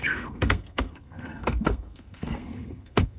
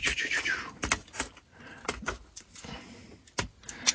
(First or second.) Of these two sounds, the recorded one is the second